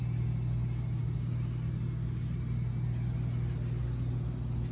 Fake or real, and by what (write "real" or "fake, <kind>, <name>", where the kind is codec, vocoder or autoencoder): real